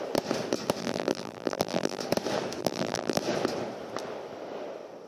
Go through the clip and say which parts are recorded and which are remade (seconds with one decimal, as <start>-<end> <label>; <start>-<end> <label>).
0.0-0.8 recorded; 0.8-2.0 remade; 2.0-2.6 recorded; 2.6-3.2 remade; 3.2-5.1 recorded